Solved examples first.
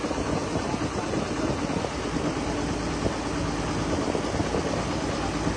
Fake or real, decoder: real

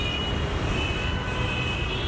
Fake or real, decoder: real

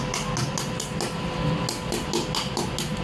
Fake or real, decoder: real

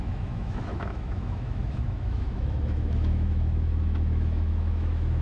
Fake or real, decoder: fake, autoencoder, DAC-VAE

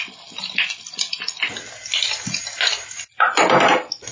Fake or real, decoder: real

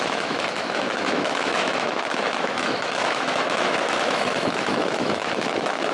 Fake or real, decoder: fake, autoencoder, DAC-VAE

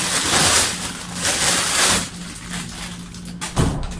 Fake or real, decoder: real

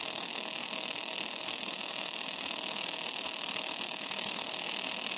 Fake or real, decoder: fake, autoencoder, DAC-VAE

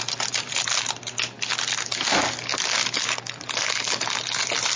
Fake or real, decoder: real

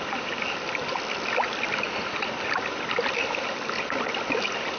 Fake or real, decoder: real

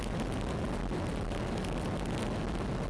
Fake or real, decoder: real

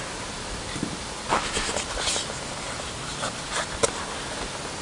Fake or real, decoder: real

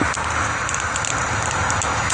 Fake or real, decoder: real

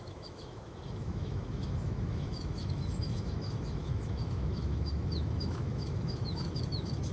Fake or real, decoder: fake, autoencoder, DAC-VAE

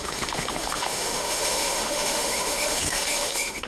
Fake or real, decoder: fake, autoencoder, DAC-VAE